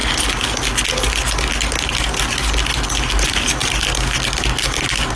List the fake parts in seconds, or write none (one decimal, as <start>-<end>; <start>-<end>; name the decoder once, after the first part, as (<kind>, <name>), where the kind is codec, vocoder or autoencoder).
3.1-3.6 (vocoder, BigVGAN v2)